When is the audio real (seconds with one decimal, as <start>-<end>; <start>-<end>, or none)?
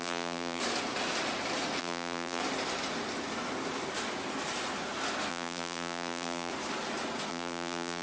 0.6-1.8; 2.4-5.3; 6.5-7.3